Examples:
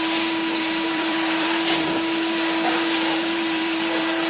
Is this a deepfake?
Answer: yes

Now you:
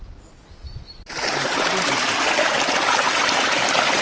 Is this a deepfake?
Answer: no